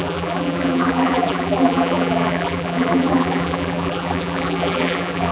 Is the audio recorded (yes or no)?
no